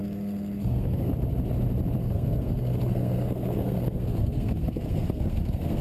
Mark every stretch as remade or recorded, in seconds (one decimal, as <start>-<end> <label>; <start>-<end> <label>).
0.0-1.1 remade; 1.1-2.0 recorded; 2.0-5.8 remade